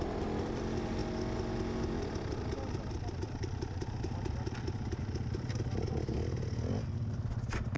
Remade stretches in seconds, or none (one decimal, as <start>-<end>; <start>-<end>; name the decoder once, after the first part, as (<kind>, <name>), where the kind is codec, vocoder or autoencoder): none